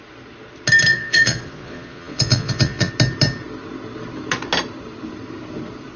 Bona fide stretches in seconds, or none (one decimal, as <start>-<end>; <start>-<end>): 0.0-0.9; 2.9-6.0